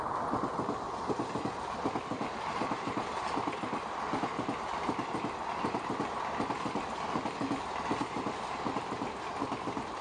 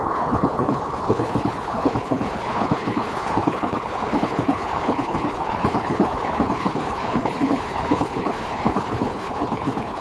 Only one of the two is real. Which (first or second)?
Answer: first